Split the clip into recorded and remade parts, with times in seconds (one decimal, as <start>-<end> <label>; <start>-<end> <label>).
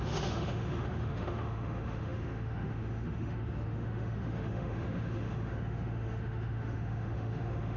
0.0-7.8 remade